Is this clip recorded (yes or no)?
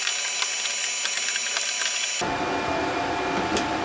yes